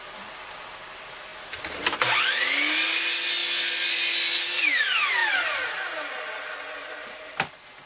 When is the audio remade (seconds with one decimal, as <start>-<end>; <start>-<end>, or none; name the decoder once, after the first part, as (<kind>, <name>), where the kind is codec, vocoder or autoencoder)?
none